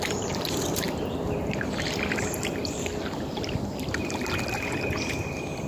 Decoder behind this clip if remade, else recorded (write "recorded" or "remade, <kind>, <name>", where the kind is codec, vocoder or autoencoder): remade, vocoder, BigVGAN v2